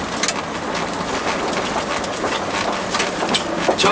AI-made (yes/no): no